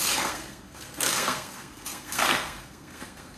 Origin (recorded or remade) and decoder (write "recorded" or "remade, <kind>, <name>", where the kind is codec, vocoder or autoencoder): remade, codec, SNAC